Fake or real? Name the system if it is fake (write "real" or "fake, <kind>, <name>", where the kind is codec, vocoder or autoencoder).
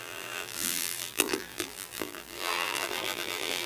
fake, vocoder, BigVGAN v2